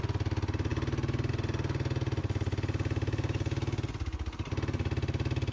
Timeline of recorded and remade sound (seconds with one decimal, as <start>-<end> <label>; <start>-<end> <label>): 0.0-5.5 recorded